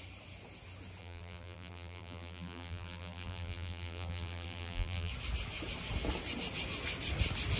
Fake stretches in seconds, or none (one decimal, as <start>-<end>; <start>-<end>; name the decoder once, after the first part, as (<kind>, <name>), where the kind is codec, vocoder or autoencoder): 1.0-5.1 (vocoder, BigVGAN v2)